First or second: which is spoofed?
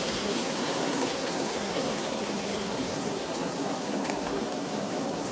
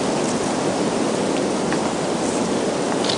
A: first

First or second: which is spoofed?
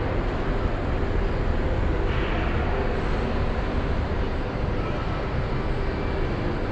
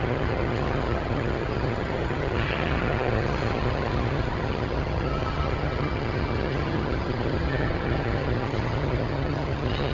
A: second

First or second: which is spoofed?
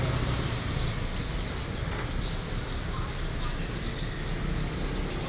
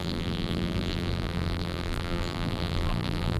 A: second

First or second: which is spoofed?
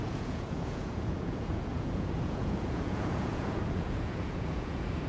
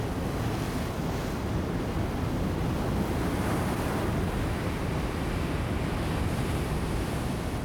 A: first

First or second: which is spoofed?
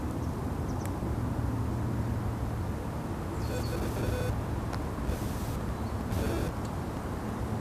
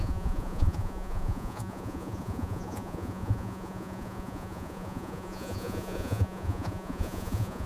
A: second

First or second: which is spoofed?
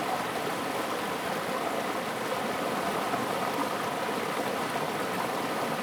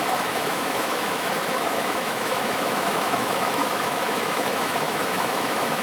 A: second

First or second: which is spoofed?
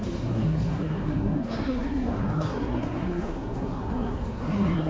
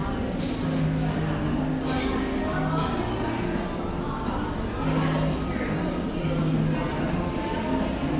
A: first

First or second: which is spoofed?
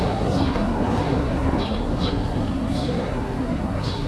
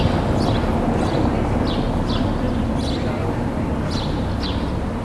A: first